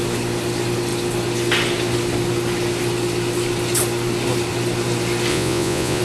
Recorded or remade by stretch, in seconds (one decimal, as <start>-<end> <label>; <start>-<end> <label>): 0.0-5.3 recorded; 5.3-6.0 remade